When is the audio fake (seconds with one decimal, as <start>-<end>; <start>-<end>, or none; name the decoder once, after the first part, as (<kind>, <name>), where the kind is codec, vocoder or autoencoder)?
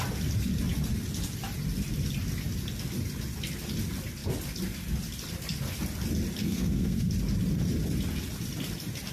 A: 6.4-7.1 (codec, SNAC)